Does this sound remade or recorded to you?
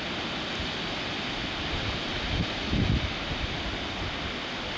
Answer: recorded